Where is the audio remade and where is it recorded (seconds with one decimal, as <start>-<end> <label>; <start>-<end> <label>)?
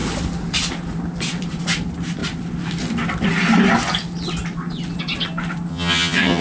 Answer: 0.0-5.7 recorded; 5.7-6.4 remade